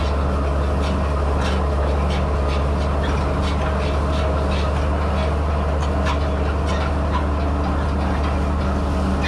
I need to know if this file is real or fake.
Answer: real